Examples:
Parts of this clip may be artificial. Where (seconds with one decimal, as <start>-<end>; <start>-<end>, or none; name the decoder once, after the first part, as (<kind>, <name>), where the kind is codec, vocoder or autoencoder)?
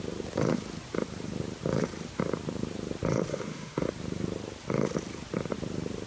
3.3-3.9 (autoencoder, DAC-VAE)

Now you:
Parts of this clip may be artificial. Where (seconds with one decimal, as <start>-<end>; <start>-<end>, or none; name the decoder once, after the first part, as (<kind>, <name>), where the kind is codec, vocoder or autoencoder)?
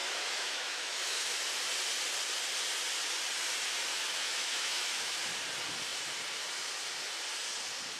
0.0-1.4 (autoencoder, DAC-VAE); 3.9-5.2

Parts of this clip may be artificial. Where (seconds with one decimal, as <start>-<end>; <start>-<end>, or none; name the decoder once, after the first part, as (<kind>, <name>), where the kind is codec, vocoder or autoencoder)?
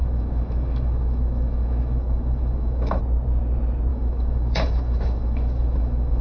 0.0-3.0 (autoencoder, DAC-VAE); 3.9-6.2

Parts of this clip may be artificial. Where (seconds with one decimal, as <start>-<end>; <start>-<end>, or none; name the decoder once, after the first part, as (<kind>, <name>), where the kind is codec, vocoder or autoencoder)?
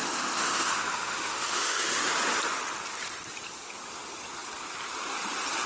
0.0-2.1 (autoencoder, DAC-VAE)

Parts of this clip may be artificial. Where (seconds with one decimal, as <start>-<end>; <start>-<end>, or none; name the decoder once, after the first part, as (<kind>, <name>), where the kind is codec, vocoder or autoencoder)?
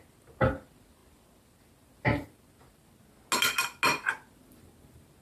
none